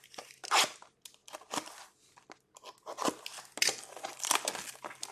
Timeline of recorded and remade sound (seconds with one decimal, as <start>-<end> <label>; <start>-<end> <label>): 0.0-5.1 recorded